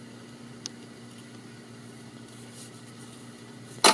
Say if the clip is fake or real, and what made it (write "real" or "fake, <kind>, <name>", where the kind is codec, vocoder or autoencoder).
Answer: real